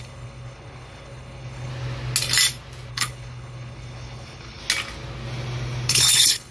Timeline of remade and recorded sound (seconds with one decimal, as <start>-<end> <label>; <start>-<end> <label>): 0.0-1.7 remade; 1.7-2.9 recorded; 2.9-4.6 remade; 4.6-5.9 recorded; 5.9-6.5 remade

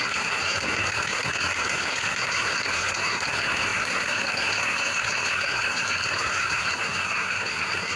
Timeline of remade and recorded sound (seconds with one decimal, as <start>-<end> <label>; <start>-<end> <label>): 0.0-8.0 remade

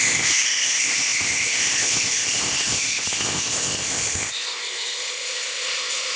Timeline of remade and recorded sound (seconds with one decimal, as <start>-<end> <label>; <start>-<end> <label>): 0.0-6.2 remade

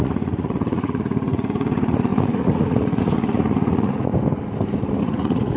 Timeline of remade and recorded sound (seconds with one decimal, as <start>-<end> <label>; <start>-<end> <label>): 0.0-4.1 remade; 4.1-5.0 recorded; 5.0-5.6 remade